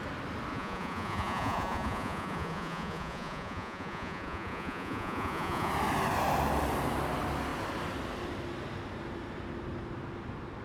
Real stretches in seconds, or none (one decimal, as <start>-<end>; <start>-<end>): 0.0-0.5; 5.7-10.6